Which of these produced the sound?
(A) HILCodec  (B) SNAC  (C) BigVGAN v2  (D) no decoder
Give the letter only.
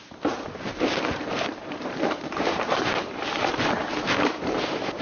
C